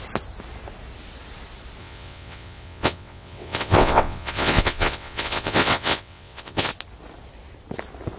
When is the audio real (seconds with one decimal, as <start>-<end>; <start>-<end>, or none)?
0.0-1.8; 6.7-8.2